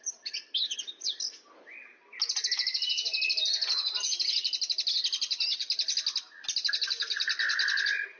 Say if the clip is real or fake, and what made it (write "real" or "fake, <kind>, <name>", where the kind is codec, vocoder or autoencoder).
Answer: real